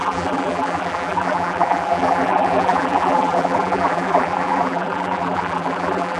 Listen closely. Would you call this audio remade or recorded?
remade